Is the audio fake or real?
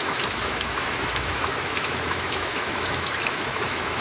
fake